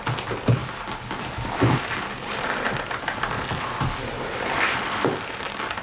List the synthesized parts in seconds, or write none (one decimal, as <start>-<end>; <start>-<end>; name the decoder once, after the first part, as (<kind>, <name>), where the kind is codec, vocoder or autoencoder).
none